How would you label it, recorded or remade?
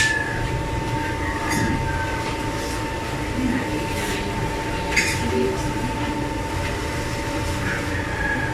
recorded